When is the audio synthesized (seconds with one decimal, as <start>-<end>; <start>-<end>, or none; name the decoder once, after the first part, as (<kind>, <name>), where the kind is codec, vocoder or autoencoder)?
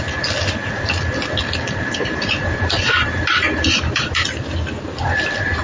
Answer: 0.6-4.0 (vocoder, BigVGAN v2)